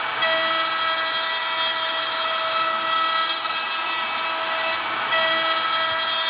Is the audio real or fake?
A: real